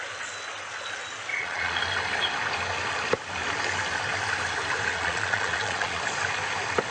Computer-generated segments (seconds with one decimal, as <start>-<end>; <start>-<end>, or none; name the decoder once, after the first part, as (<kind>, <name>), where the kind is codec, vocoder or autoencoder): 1.3-1.8 (vocoder, Vocos); 4.9-6.0